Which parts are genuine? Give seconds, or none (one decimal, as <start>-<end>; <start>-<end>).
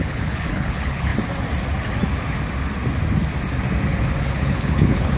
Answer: 1.1-4.2